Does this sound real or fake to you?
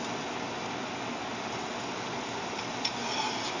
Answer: real